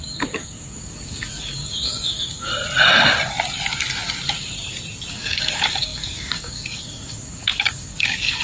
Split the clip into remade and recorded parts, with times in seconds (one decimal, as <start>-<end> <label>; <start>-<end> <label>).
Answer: 0.0-2.5 remade; 2.5-5.1 recorded; 5.1-8.4 remade

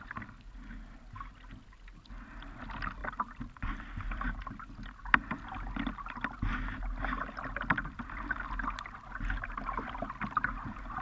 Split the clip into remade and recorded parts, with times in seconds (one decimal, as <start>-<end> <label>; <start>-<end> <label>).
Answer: 0.0-3.0 recorded; 3.0-4.3 remade; 4.3-7.8 recorded; 7.8-8.4 remade; 8.4-11.0 recorded

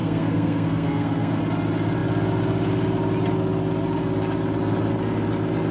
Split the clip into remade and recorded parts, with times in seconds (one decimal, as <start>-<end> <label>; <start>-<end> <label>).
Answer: 0.0-1.4 remade; 1.4-5.7 recorded

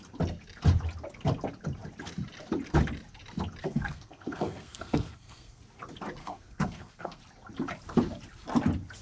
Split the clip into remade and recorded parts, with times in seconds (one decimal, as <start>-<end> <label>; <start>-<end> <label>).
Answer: 0.0-3.6 recorded; 3.6-5.6 remade; 5.6-6.2 recorded; 6.2-7.2 remade; 7.2-9.0 recorded

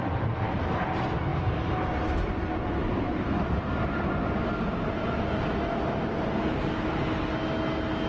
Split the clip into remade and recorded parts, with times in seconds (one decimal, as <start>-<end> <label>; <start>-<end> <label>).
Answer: 0.0-8.1 recorded